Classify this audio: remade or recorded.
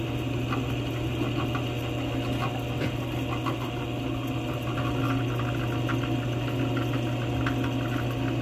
recorded